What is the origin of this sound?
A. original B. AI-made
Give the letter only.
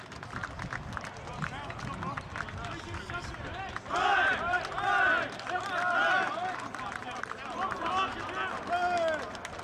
A